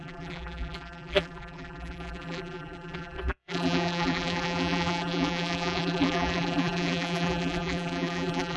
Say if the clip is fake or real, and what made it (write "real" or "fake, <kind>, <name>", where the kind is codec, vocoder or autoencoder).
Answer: fake, vocoder, BigVGAN v2